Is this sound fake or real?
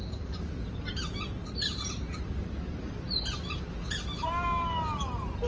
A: real